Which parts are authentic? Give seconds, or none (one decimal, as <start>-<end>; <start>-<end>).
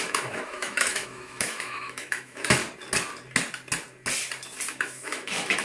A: 2.6-4.7